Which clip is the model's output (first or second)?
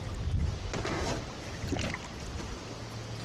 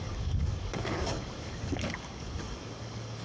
second